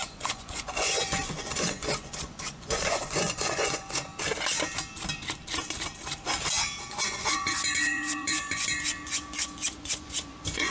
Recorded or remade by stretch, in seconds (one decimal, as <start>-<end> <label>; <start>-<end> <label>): 0.0-4.1 remade; 4.1-6.9 recorded; 6.9-10.7 remade